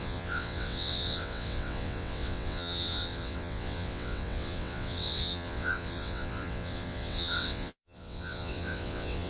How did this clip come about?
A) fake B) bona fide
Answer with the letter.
A